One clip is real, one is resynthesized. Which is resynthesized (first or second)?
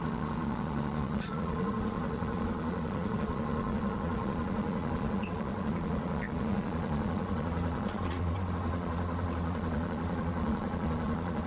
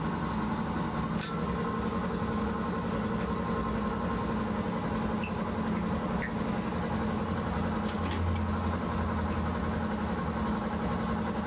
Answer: first